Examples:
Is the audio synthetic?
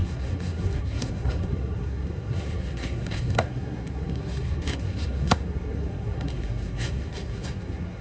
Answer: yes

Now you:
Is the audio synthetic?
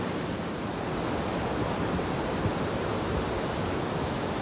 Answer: no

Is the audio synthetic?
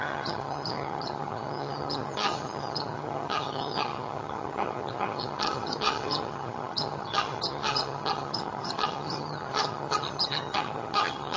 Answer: yes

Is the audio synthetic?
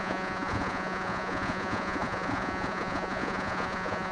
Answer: yes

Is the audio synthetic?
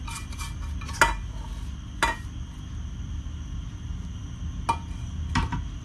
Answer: no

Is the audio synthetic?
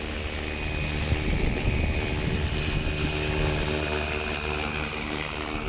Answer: no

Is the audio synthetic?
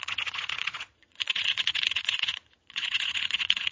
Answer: yes